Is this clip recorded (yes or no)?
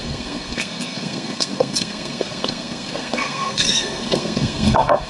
no